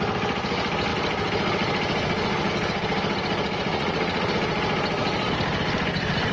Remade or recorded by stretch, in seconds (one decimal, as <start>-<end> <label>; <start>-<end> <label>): 0.0-3.7 recorded; 3.7-4.3 remade; 4.3-6.3 recorded